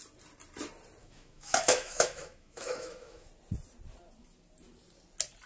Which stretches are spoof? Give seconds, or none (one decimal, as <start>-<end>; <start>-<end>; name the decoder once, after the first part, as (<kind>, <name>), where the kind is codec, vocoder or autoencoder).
1.0-3.3 (autoencoder, DAC-VAE)